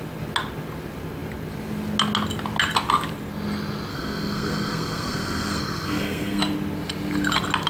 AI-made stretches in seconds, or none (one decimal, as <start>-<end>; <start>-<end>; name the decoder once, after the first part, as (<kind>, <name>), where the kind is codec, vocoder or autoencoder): 3.9-6.4 (codec, SNAC)